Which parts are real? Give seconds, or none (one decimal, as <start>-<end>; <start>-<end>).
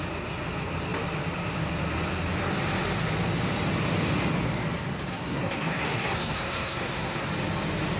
0.0-5.1; 7.3-8.0